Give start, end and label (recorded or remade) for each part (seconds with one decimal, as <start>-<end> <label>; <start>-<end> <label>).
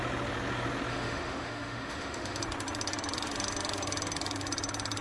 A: 0.0-0.9 recorded; 0.9-2.4 remade; 2.4-5.0 recorded